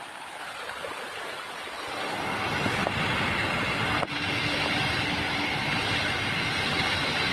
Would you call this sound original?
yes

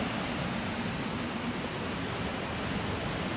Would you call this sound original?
yes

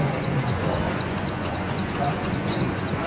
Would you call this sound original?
no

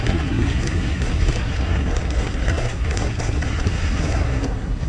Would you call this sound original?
no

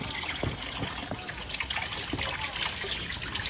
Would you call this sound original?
yes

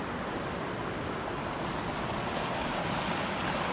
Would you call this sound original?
yes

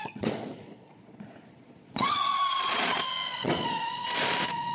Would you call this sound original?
no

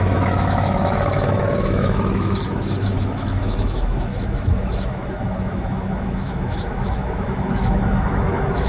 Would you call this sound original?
no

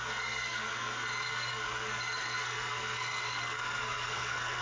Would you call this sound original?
no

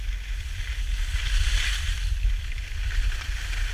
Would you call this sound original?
yes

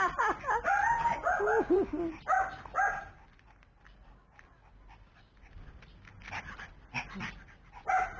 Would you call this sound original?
yes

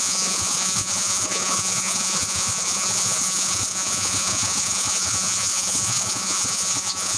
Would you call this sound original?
no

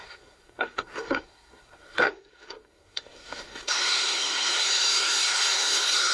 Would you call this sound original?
no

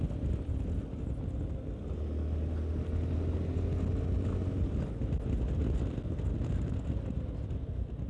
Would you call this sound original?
yes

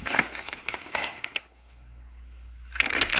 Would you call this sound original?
no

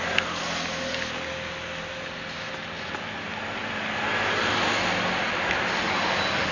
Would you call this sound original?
yes